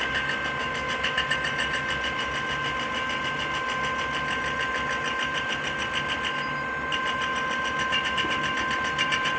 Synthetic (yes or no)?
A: no